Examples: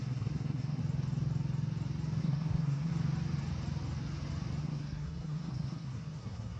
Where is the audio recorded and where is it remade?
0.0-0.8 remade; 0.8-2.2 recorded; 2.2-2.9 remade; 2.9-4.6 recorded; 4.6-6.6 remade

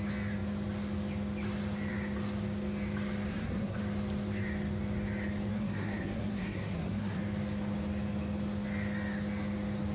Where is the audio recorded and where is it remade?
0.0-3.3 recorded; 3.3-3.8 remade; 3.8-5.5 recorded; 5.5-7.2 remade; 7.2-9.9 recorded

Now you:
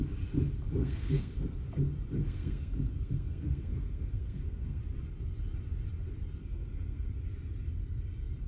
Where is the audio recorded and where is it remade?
0.0-0.8 recorded; 0.8-1.3 remade; 1.3-2.2 recorded; 2.2-4.8 remade; 4.8-6.4 recorded; 6.4-7.1 remade; 7.1-8.5 recorded